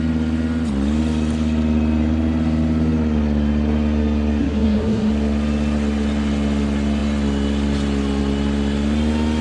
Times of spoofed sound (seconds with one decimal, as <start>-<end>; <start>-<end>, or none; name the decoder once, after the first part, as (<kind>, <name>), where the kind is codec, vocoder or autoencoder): 4.4-5.1 (codec, SNAC)